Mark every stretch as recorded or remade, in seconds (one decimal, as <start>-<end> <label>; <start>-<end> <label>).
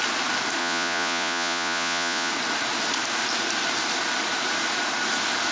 0.0-0.6 recorded; 0.6-2.3 remade; 2.3-5.5 recorded